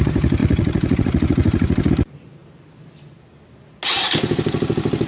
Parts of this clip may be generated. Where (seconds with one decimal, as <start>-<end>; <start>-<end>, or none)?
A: 0.4-1.9